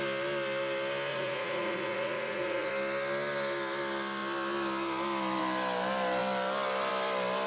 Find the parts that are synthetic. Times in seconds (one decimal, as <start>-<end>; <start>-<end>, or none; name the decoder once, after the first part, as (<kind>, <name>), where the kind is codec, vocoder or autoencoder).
1.1-2.7 (vocoder, Vocos)